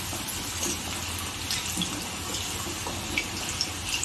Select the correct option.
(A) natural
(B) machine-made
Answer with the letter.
A